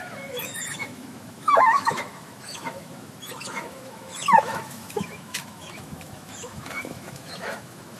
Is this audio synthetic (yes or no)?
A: yes